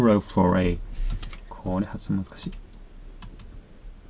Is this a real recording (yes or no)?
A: yes